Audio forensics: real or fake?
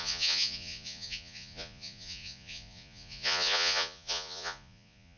fake